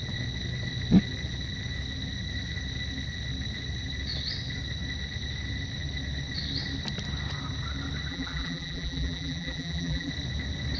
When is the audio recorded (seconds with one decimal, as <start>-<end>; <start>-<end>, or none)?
0.0-8.1; 10.1-10.8